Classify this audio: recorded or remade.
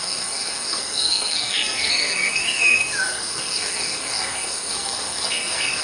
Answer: remade